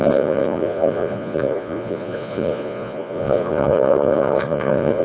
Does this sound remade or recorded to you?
remade